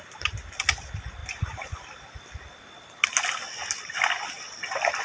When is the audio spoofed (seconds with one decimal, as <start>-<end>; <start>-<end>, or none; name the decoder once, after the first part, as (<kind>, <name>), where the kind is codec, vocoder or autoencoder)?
none